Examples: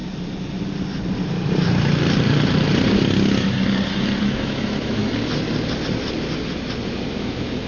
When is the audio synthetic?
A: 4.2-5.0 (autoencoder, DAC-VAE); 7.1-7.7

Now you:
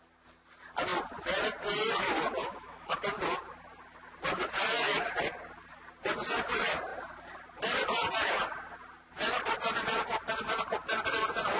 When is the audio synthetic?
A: 2.4-3.0 (autoencoder, DAC-VAE)

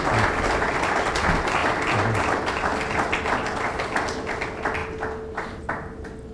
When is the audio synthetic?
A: none

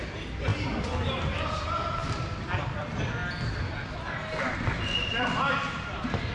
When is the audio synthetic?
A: 0.0-0.5 (vocoder, BigVGAN v2); 1.1-2.0; 2.8-3.2; 4.5-6.3